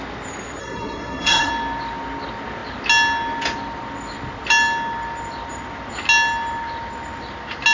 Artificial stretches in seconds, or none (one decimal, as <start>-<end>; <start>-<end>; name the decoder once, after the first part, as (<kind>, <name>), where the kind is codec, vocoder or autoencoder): 0.6-1.5 (codec, SNAC)